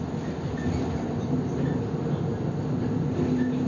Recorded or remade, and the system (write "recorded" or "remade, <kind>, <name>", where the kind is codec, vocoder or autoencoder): recorded